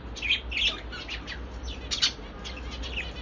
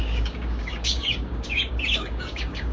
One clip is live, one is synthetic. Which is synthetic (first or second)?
second